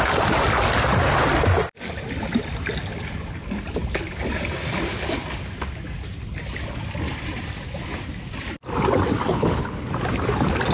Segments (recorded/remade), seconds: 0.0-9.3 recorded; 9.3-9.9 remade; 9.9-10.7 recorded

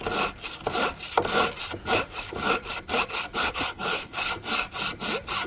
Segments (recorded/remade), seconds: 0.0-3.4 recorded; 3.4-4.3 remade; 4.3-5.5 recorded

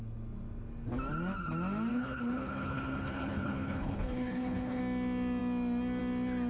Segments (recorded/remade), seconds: 0.0-1.9 recorded; 1.9-4.8 remade; 4.8-6.5 recorded

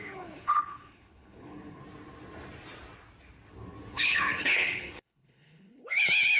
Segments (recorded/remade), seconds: 0.0-1.8 remade; 1.8-3.9 recorded; 3.9-6.4 remade

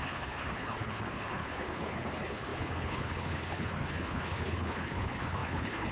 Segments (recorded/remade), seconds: 0.0-5.9 remade